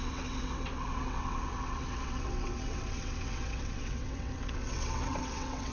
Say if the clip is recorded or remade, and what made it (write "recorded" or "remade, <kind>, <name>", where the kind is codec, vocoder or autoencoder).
remade, vocoder, WaveNeXt